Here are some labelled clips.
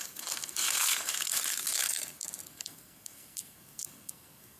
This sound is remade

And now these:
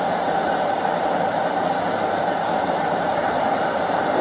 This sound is remade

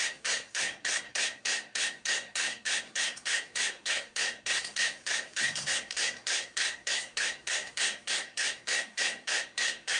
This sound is remade